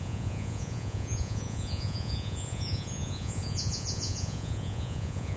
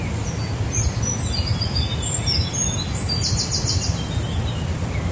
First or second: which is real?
second